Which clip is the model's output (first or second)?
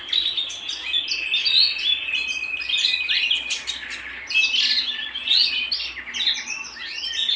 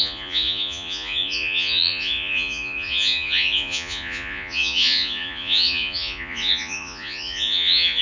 second